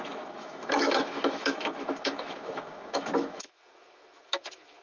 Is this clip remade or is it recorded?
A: remade